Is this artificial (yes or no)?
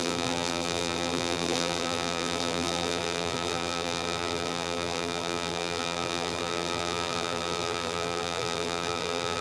yes